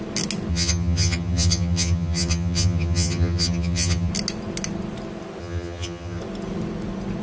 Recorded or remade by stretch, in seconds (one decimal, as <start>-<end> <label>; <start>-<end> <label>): 0.0-0.5 recorded; 0.5-4.1 remade; 4.1-5.4 recorded; 5.4-6.2 remade; 6.2-7.2 recorded